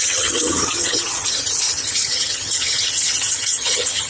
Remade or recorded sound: remade